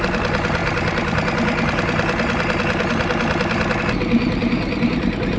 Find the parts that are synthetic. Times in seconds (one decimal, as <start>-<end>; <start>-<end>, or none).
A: none